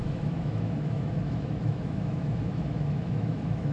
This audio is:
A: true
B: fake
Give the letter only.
B